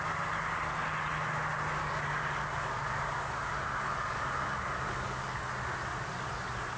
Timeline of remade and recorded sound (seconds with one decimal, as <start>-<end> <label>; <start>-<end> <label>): 0.0-1.8 recorded; 1.8-5.5 remade; 5.5-6.8 recorded